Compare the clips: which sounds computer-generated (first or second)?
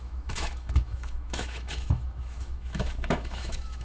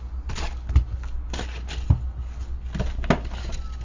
first